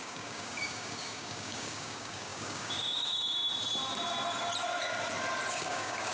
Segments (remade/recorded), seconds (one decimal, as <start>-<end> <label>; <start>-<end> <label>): 0.0-3.4 remade; 3.4-5.5 recorded; 5.5-6.1 remade